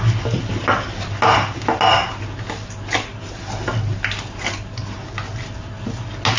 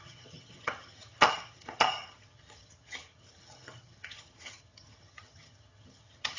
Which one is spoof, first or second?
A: second